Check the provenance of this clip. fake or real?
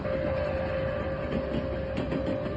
real